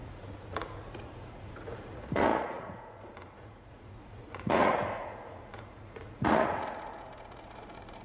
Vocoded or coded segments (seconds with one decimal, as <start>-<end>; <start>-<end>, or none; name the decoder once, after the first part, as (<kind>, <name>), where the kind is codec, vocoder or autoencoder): 0.0-8.0 (vocoder, Vocos)